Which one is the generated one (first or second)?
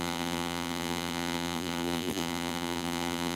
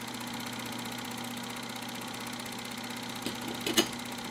first